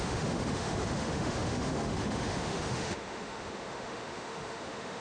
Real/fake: fake